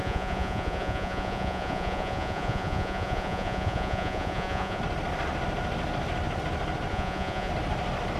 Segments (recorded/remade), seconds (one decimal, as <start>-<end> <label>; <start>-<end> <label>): 0.0-4.8 remade; 4.8-6.9 recorded; 6.9-7.5 remade; 7.5-8.2 recorded